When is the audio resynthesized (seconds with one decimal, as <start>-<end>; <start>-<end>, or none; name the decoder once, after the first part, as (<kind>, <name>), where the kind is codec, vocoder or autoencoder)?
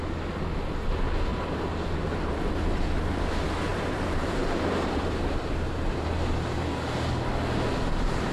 1.3-2.5 (vocoder, BigVGAN v2); 3.7-5.4